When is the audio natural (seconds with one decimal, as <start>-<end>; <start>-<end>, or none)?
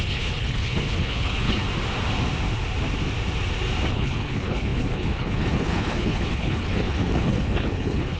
1.6-3.9